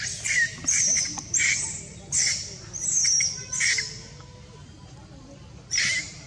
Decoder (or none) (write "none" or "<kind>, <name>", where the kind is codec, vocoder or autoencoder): none